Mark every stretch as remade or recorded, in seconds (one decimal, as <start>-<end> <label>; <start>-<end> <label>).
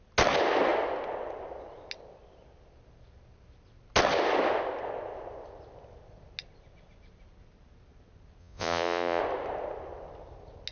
0.0-8.4 recorded; 8.4-9.2 remade; 9.2-10.7 recorded